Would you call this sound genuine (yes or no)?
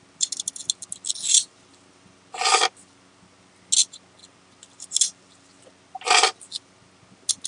yes